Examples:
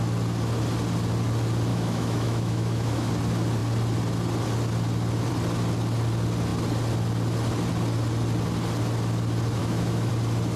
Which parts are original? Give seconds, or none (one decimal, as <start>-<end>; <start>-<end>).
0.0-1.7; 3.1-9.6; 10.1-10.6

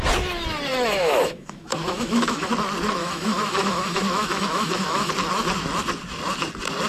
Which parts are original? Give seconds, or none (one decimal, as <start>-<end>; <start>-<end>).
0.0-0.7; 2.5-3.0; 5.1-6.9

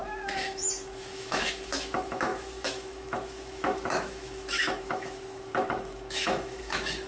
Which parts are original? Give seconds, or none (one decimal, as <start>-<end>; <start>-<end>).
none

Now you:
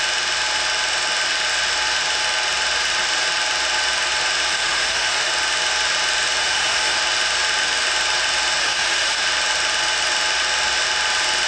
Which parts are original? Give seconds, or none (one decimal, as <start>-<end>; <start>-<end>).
0.0-4.5; 5.3-6.4; 7.0-8.6; 9.2-11.5

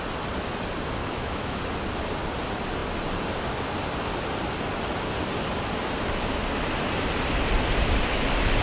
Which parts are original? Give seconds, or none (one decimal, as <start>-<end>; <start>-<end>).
0.0-1.0; 1.6-8.6

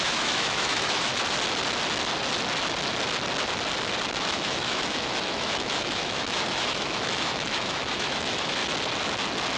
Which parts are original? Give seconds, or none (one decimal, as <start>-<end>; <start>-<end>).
1.1-4.1; 8.6-9.6

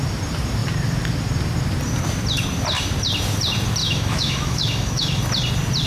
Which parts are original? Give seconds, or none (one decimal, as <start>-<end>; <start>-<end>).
0.0-3.8; 5.2-5.9

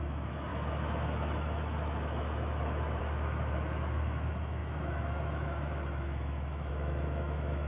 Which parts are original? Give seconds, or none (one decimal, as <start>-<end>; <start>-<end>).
none